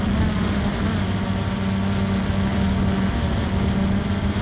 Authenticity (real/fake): real